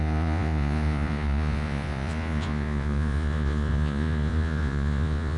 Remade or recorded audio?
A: remade